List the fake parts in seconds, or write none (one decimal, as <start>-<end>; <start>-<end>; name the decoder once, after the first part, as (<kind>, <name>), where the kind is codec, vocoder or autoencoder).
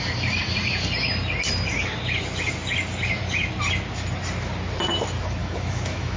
5.4-6.2 (autoencoder, DAC-VAE)